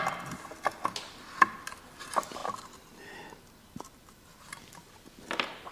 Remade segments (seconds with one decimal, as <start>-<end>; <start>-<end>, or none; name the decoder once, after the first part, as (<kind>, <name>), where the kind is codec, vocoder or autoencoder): none

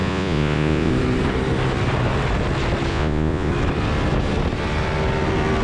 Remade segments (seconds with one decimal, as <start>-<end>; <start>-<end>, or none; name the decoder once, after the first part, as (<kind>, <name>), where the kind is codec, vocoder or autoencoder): 0.0-0.9 (vocoder, Vocos); 2.9-3.5

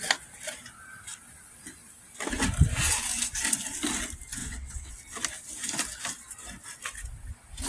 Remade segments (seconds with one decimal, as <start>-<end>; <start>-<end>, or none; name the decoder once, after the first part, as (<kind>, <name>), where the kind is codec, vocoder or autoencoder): 4.4-4.9 (vocoder, WaveNeXt)

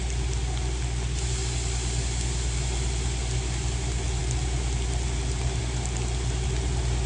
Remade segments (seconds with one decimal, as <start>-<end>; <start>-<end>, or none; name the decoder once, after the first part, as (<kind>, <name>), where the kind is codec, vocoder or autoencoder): none

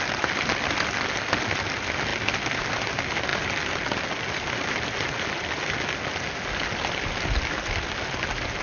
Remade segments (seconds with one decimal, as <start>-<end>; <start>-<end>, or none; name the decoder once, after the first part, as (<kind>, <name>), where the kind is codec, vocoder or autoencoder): none

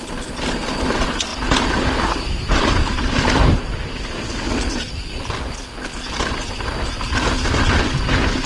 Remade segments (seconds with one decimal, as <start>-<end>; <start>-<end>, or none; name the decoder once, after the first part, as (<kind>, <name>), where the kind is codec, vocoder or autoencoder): none